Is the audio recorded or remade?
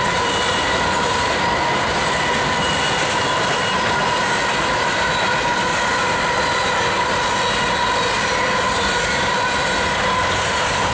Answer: recorded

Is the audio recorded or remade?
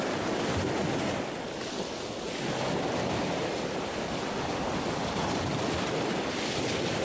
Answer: recorded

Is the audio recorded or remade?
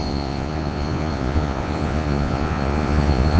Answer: remade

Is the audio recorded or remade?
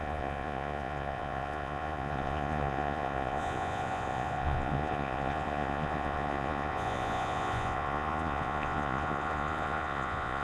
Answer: remade